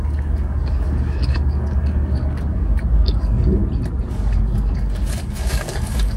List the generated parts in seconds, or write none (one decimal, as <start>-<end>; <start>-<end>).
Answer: 0.0-3.6; 4.1-6.2